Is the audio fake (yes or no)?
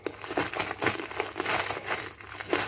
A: no